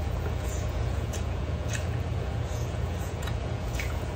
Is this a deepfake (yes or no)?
yes